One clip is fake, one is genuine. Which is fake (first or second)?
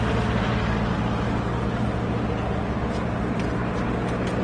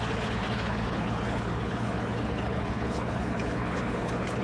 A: second